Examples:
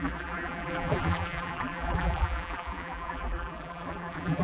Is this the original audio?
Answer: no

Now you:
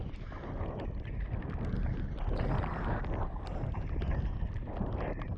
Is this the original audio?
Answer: yes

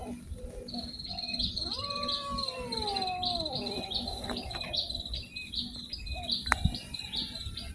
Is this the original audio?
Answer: yes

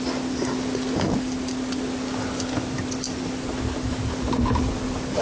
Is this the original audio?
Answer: yes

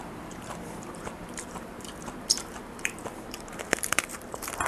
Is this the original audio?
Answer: no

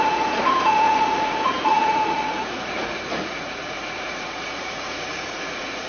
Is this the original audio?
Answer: no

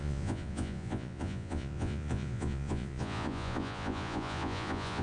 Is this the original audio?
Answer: no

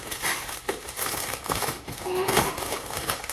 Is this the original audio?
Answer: no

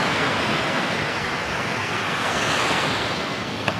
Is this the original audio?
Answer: no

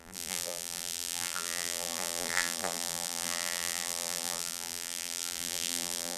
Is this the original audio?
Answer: no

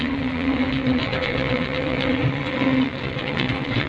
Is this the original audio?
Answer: no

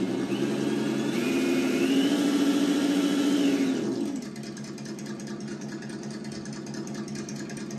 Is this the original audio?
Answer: yes